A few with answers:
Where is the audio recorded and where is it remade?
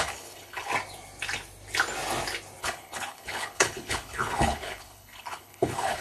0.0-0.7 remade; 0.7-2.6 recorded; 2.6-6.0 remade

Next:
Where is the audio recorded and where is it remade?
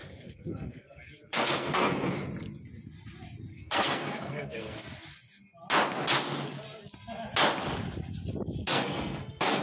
0.0-2.1 remade; 2.1-3.5 recorded; 3.5-4.8 remade; 4.8-8.6 recorded; 8.6-9.6 remade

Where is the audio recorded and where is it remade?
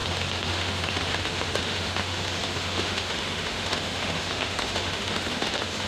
0.0-5.9 remade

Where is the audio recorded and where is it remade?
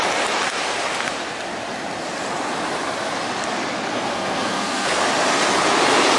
0.0-3.9 recorded; 3.9-5.0 remade; 5.0-6.2 recorded